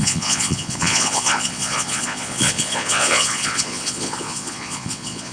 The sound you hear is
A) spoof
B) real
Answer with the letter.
A